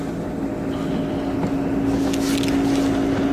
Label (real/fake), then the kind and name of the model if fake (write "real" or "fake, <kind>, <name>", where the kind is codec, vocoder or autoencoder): real